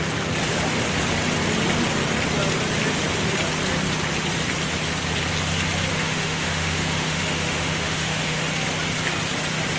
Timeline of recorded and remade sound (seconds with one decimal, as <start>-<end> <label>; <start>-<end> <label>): 0.0-5.9 recorded; 5.9-8.4 remade; 8.4-9.8 recorded